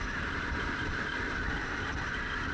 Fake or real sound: real